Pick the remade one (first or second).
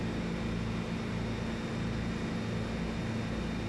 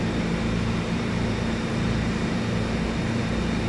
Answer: second